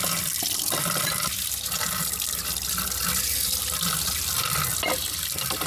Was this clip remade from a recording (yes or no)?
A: no